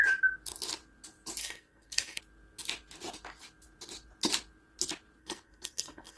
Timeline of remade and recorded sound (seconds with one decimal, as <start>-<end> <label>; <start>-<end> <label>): 0.0-1.4 recorded; 1.4-2.2 remade; 2.2-5.2 recorded; 5.2-6.2 remade